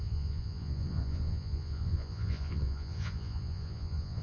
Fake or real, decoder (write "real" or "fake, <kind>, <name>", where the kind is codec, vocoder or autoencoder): fake, vocoder, Vocos